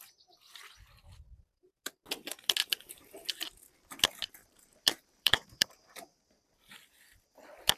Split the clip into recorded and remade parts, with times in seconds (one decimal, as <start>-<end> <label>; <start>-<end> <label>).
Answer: 0.0-2.6 recorded; 2.6-3.3 remade; 3.3-4.4 recorded; 4.4-5.8 remade; 5.8-7.8 recorded